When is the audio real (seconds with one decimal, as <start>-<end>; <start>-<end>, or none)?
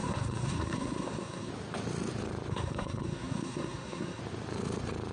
1.5-2.5; 4.2-5.1